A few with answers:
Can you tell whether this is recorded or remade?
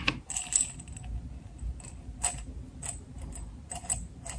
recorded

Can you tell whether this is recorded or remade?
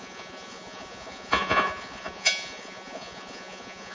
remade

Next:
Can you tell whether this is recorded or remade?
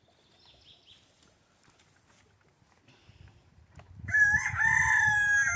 recorded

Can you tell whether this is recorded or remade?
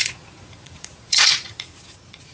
remade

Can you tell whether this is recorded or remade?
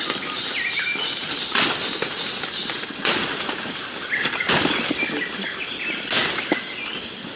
recorded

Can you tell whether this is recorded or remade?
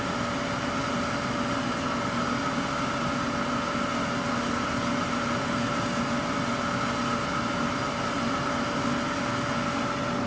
recorded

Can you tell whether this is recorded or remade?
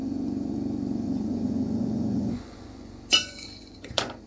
remade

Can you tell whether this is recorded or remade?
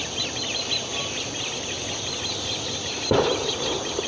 recorded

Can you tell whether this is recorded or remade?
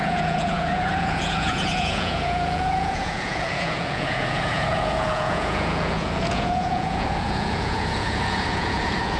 remade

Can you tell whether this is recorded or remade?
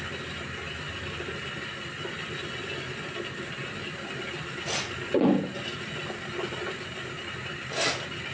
recorded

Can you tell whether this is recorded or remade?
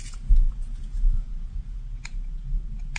remade